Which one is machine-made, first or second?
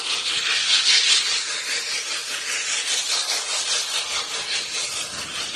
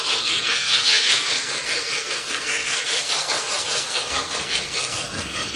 second